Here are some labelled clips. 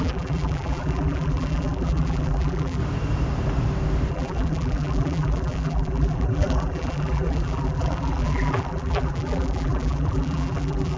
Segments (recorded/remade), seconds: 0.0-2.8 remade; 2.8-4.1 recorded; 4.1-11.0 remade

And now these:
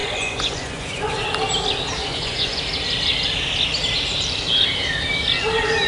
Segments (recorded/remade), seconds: 0.0-1.1 remade; 1.1-2.0 recorded; 2.0-2.6 remade; 2.6-5.9 recorded

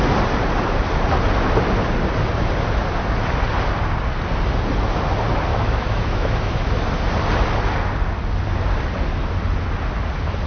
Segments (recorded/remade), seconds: 0.0-5.5 recorded; 5.5-6.7 remade; 6.7-10.5 recorded

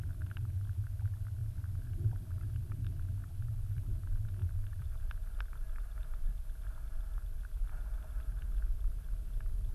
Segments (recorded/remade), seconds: 0.0-3.2 recorded; 3.2-3.8 remade; 3.8-4.4 recorded; 4.4-8.2 remade; 8.2-9.7 recorded

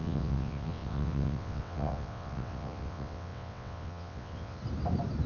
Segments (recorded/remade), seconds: 0.0-4.6 remade; 4.6-5.3 recorded